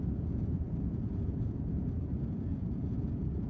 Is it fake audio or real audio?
fake